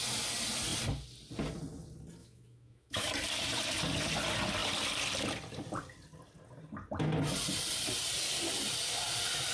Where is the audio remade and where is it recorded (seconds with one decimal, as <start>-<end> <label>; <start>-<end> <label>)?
0.0-2.2 recorded; 2.2-3.1 remade; 3.1-9.5 recorded

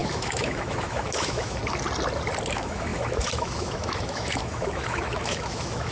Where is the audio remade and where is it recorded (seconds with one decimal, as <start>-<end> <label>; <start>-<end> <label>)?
0.0-1.6 remade; 1.6-2.5 recorded; 2.5-5.9 remade

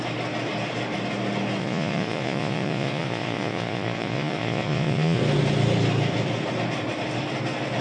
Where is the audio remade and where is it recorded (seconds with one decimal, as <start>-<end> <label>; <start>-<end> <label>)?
0.0-1.6 recorded; 1.6-5.2 remade; 5.2-7.8 recorded

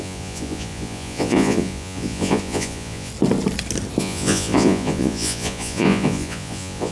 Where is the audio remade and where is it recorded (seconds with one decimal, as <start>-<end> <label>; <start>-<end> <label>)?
0.0-3.1 remade; 3.1-4.0 recorded; 4.0-6.9 remade

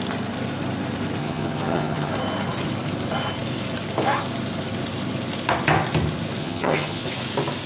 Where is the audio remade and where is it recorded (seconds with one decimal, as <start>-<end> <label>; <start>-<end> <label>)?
0.0-1.2 recorded; 1.2-2.1 remade; 2.1-6.4 recorded; 6.4-7.0 remade; 7.0-7.7 recorded

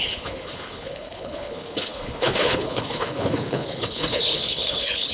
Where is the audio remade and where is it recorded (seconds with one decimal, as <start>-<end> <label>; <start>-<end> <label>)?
0.0-5.1 remade

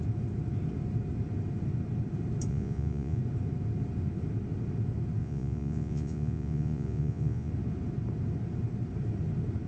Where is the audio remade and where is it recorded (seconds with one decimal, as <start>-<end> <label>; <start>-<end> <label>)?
0.0-2.5 recorded; 2.5-3.2 remade; 3.2-5.2 recorded; 5.2-7.5 remade; 7.5-9.7 recorded

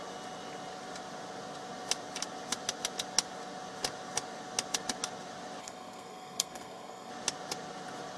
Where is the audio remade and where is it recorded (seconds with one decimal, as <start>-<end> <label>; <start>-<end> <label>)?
0.0-5.6 recorded; 5.6-7.1 remade; 7.1-8.2 recorded